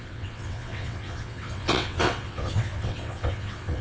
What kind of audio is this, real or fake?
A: fake